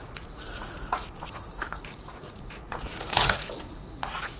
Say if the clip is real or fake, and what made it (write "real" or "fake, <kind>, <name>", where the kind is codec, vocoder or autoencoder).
fake, vocoder, Vocos